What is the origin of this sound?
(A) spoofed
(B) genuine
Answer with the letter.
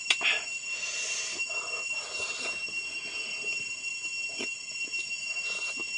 B